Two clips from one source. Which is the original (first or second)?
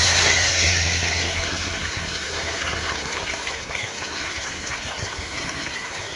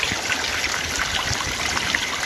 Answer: second